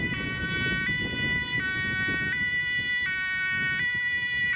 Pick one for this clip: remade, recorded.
recorded